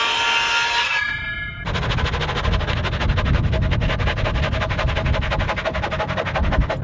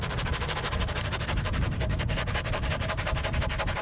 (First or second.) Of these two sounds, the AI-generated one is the second